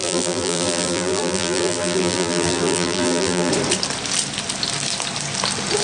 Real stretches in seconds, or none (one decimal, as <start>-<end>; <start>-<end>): 3.5-5.8